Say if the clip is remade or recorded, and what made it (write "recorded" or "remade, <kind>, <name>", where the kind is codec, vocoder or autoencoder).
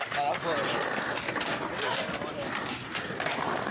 recorded